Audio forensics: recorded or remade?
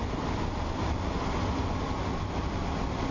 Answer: recorded